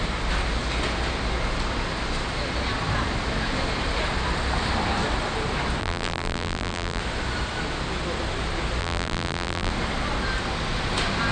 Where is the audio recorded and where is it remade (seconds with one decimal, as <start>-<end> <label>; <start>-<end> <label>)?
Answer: 0.0-5.8 recorded; 5.8-7.0 remade; 7.0-8.8 recorded; 8.8-9.7 remade; 9.7-11.3 recorded